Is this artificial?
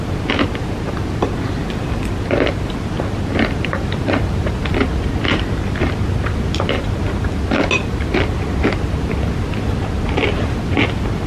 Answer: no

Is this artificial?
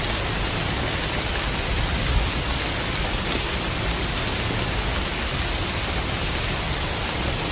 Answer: no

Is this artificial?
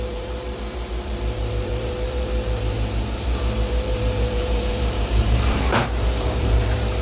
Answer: yes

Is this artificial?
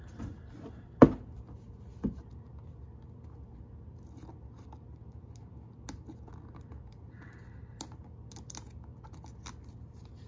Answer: no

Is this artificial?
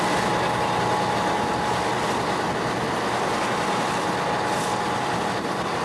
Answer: no